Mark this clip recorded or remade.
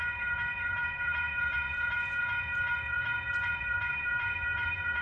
remade